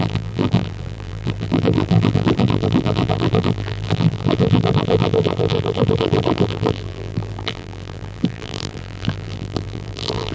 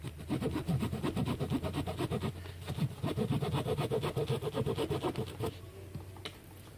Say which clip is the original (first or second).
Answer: second